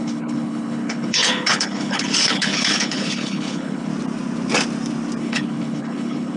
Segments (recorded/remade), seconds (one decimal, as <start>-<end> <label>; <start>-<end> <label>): 0.0-3.9 remade; 3.9-5.2 recorded; 5.2-6.4 remade